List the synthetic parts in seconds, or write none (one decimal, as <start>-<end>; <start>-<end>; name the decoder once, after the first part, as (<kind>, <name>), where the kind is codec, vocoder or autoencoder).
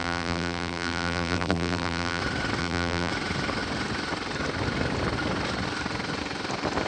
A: 0.0-2.2 (vocoder, BigVGAN v2); 2.6-3.1